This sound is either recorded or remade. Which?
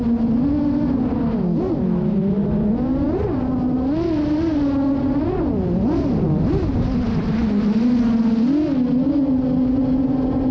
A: recorded